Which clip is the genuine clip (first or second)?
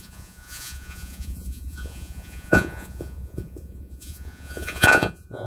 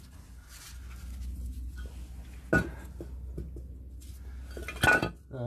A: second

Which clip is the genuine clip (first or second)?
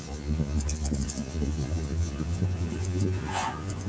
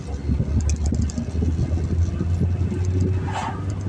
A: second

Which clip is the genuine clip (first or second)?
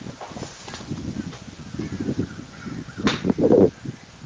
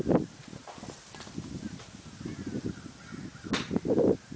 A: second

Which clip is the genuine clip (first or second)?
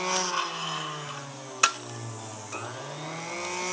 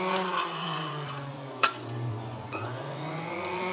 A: first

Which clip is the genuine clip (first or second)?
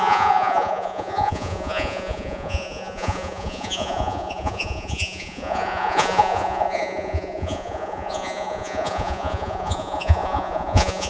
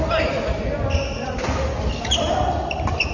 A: second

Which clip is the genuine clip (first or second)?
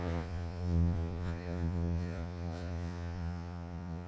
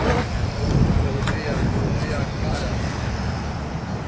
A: second